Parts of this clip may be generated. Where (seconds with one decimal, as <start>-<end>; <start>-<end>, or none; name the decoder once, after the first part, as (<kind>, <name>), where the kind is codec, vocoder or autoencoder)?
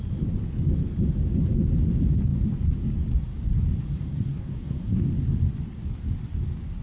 3.9-5.0 (codec, SNAC)